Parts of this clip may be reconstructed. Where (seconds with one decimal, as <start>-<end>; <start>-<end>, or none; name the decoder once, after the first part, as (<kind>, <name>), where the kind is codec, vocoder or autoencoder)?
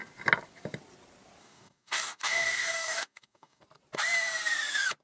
1.4-3.6 (codec, DAC)